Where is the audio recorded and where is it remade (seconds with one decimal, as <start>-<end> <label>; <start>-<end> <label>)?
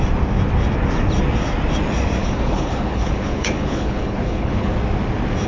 0.0-2.2 recorded; 2.2-4.7 remade; 4.7-5.5 recorded